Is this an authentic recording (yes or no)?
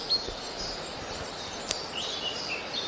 yes